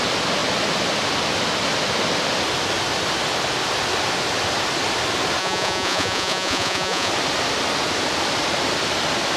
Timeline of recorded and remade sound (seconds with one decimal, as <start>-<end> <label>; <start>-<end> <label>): 0.0-5.4 recorded; 5.4-7.1 remade; 7.1-9.4 recorded